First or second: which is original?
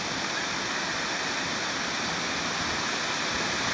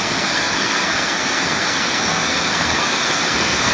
first